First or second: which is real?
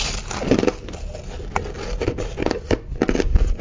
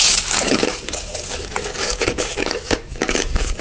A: first